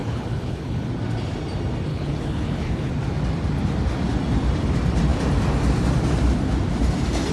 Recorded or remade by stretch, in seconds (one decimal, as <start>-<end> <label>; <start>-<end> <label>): 0.0-0.9 remade; 0.9-1.9 recorded; 1.9-2.9 remade; 2.9-7.3 recorded